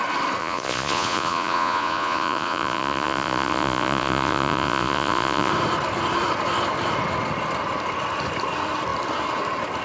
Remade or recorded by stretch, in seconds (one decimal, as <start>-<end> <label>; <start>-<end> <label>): 0.0-0.4 recorded; 0.4-5.5 remade; 5.5-9.8 recorded